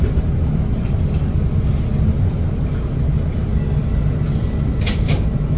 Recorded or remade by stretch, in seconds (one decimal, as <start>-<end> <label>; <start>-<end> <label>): 0.0-5.6 recorded